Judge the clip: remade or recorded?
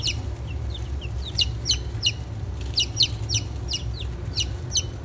recorded